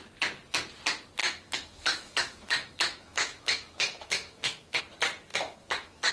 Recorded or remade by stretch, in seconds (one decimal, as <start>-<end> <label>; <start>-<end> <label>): 0.0-1.2 recorded; 1.2-4.8 remade; 4.8-5.3 recorded; 5.3-6.1 remade